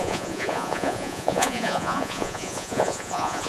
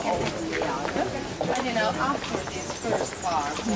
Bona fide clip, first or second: second